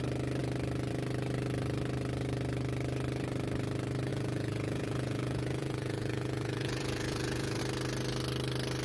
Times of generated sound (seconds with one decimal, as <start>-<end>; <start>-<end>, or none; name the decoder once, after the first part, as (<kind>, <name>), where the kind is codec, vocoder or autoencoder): 4.1-7.6 (vocoder, Vocos)